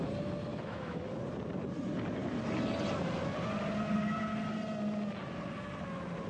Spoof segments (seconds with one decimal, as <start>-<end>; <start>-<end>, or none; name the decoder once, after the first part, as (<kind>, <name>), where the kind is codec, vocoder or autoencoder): 0.5-1.0 (autoencoder, DAC-VAE)